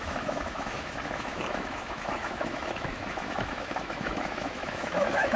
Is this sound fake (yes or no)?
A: yes